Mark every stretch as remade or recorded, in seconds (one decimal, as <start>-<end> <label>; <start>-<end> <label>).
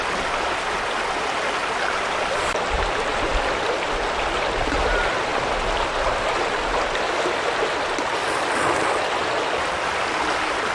0.0-1.6 recorded; 1.6-3.3 remade; 3.3-10.7 recorded